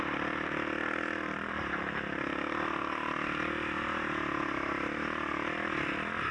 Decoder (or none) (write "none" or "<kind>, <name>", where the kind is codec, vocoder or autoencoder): none